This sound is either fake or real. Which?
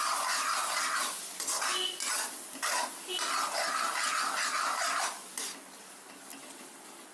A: real